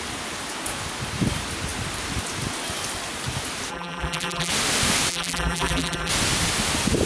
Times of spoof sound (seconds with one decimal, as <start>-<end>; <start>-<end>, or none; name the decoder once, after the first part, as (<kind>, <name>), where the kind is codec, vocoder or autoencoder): 3.7-4.5 (vocoder, BigVGAN v2); 5.1-6.1